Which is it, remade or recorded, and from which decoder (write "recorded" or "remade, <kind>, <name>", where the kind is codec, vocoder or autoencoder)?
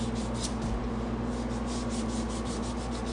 recorded